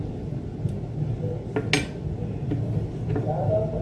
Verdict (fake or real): real